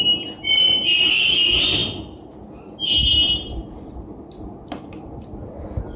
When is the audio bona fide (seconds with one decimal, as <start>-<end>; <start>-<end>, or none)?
0.0-6.0